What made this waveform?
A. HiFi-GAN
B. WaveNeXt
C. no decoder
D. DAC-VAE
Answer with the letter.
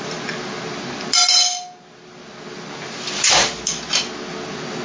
C